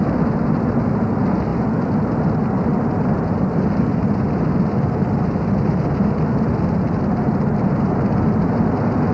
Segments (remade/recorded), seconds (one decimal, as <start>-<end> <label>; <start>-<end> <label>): 0.0-9.1 recorded